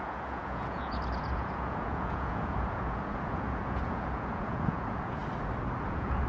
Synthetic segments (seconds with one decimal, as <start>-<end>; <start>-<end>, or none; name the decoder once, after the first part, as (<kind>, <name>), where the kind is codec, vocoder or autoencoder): 0.0-5.2 (vocoder, Vocos); 5.8-6.3